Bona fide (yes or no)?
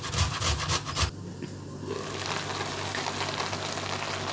yes